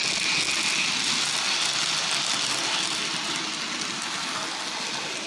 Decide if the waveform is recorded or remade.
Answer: recorded